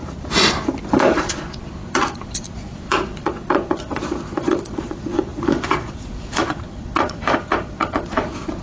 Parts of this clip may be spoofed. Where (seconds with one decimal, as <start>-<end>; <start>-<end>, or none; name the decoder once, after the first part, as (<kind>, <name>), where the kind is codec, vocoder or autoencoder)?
1.1-8.6 (vocoder, Vocos)